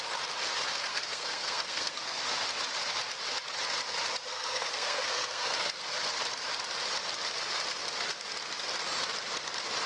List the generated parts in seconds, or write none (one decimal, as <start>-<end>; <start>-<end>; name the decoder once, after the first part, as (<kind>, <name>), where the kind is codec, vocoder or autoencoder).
0.9-2.2 (codec, SNAC); 4.3-5.8